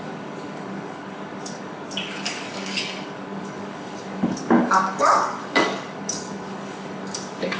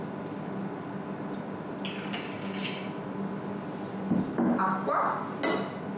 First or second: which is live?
second